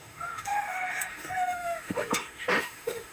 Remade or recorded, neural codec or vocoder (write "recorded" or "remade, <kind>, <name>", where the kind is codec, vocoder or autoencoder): remade, autoencoder, DAC-VAE